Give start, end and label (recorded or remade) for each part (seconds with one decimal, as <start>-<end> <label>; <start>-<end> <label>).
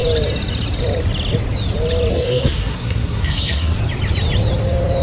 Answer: 0.0-2.1 recorded; 2.1-3.8 remade; 3.8-5.0 recorded